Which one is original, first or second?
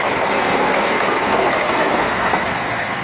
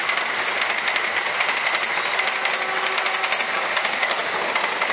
second